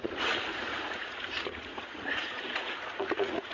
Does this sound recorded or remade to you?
remade